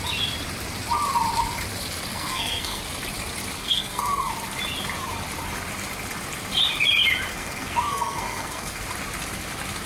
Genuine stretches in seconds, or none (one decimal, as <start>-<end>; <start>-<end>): 0.0-2.1; 2.8-3.6; 4.3-7.3; 8.8-9.9